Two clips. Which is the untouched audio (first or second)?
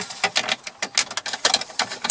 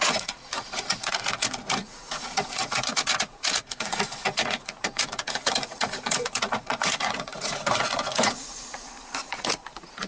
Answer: first